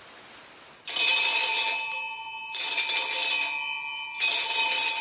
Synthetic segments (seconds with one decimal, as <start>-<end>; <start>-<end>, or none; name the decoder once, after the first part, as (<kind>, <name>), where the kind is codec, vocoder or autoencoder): 0.0-0.4 (vocoder, BigVGAN v2); 1.1-1.5; 4.5-5.0